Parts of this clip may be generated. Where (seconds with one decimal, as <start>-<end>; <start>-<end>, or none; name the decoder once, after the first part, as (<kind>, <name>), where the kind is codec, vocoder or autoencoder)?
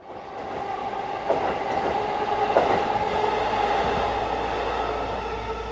none